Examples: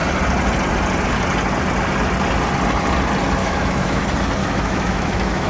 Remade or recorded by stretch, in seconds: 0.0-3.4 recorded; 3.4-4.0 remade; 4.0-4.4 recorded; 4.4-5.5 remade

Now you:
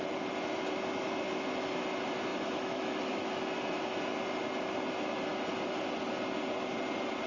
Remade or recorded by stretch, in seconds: 0.0-2.3 recorded; 2.3-3.4 remade; 3.4-7.3 recorded